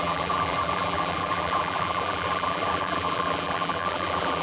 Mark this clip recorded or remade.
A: remade